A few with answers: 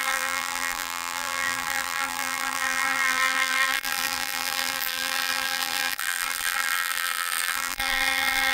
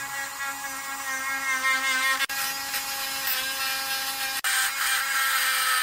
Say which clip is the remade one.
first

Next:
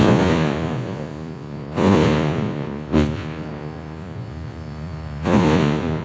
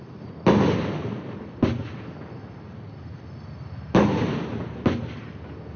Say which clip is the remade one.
first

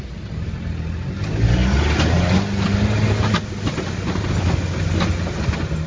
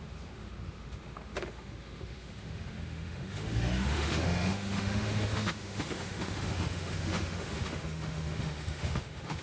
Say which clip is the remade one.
second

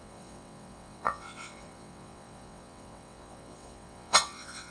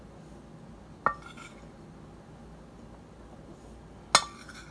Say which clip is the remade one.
first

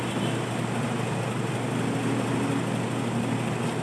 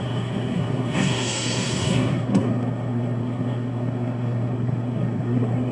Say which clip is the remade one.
second